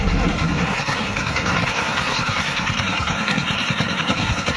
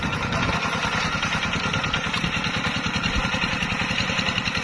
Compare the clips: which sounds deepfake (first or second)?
first